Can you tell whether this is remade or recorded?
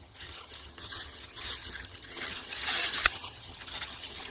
remade